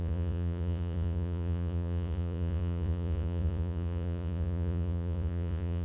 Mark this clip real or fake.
fake